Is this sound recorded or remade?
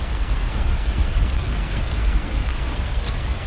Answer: remade